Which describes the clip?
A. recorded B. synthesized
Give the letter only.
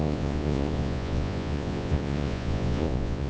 B